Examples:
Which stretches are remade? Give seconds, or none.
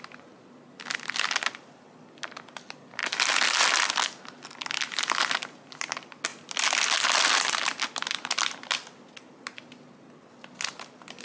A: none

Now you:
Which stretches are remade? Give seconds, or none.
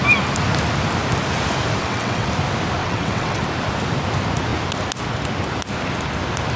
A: 1.8-2.3 (vocoder, WaveNeXt); 2.8-3.4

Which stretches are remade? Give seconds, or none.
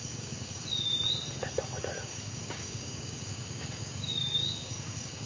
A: 0.0-0.9 (codec, DAC); 2.0-5.3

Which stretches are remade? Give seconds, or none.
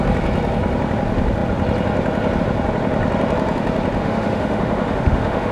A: 4.0-5.5 (autoencoder, DAC-VAE)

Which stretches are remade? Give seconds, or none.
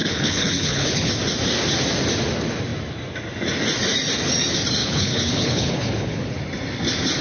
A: 0.0-1.1 (codec, HILCodec); 4.8-6.4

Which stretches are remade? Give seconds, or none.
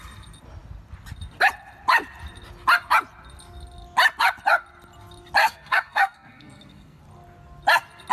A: 5.4-7.0 (codec, SNAC)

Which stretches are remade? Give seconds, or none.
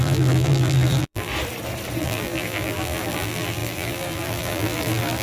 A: 0.0-1.3 (vocoder, BigVGAN v2); 2.0-5.2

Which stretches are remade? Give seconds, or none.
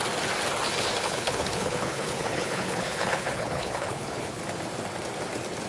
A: 1.0-4.4 (codec, HILCodec)